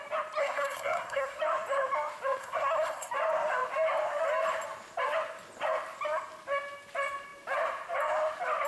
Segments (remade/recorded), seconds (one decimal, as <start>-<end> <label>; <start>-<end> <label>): 0.0-0.4 recorded; 0.4-1.4 remade; 1.4-2.4 recorded; 2.4-3.1 remade; 3.1-8.7 recorded